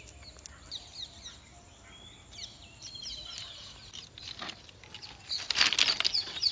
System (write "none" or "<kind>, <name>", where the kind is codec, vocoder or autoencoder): none